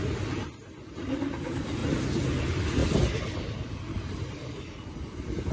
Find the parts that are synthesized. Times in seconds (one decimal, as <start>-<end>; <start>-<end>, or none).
0.9-1.8; 2.4-2.8; 3.4-5.5